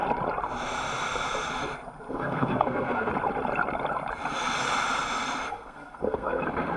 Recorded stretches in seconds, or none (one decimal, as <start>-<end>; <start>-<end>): 0.0-2.1; 3.1-5.5